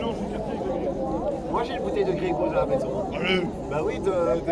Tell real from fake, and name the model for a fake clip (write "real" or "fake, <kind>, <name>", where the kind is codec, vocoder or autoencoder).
fake, vocoder, BigVGAN v2